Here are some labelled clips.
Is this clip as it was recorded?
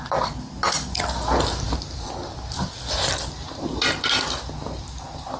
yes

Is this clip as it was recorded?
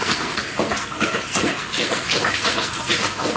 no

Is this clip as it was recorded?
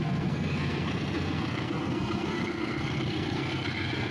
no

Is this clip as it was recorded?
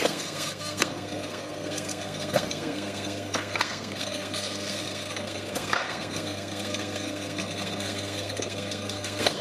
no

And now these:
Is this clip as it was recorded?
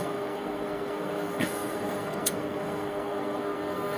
no